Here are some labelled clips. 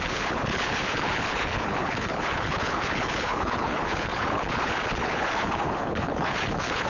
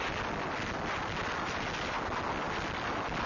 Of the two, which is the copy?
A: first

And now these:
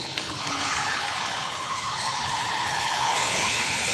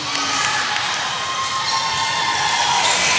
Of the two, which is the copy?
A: first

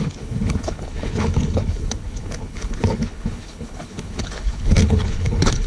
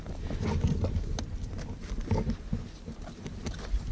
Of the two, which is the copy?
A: first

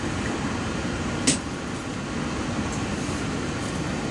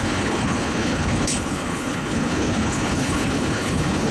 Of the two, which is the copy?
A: second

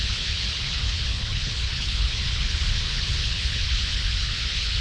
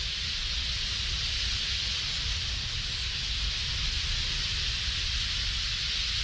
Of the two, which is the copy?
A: first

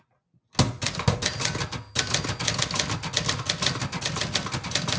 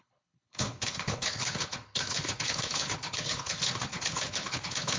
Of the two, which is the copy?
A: second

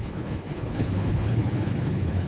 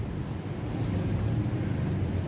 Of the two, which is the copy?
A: first